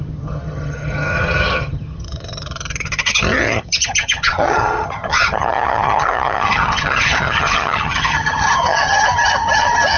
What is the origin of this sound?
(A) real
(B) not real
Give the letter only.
B